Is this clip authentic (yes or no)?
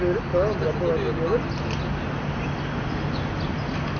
yes